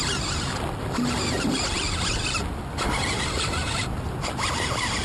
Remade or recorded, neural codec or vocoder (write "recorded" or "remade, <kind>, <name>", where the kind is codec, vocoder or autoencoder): recorded